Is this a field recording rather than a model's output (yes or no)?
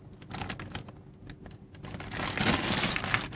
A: yes